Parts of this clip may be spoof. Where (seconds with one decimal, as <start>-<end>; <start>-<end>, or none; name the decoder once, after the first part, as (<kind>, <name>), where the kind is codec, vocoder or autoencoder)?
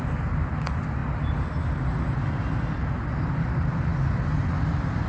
none